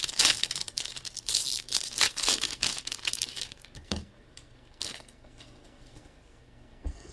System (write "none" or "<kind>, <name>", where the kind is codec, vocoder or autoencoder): codec, SNAC